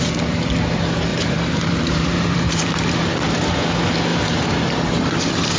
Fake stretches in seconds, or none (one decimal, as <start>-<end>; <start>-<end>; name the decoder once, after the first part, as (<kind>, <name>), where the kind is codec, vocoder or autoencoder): 1.1-3.0 (vocoder, BigVGAN v2); 4.1-5.6